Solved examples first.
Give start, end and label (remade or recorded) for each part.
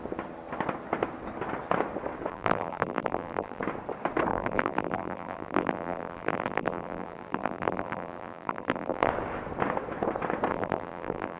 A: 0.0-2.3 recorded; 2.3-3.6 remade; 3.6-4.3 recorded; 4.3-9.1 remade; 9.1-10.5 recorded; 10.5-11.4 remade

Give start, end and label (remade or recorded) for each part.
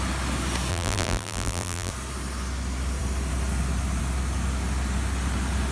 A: 0.0-0.7 recorded; 0.7-1.9 remade; 1.9-5.7 recorded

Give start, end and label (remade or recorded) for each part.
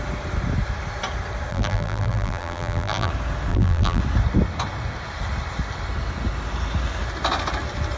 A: 0.0-1.5 recorded; 1.5-3.1 remade; 3.1-3.5 recorded; 3.5-4.0 remade; 4.0-8.0 recorded